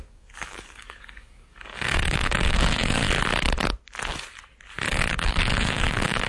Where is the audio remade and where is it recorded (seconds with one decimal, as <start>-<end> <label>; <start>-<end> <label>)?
0.0-3.0 remade; 3.0-4.9 recorded; 4.9-6.3 remade